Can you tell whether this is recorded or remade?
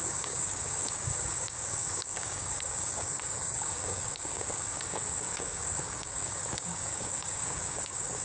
remade